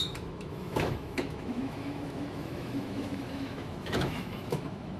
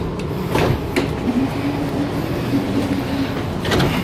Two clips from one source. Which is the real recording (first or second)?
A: second